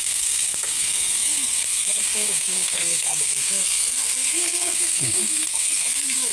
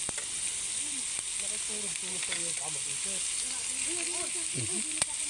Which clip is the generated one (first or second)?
first